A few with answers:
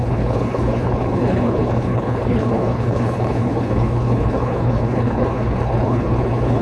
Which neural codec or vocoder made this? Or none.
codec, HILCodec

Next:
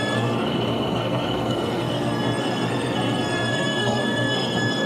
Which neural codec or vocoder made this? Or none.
codec, SNAC